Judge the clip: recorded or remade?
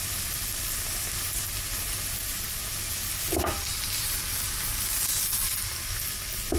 recorded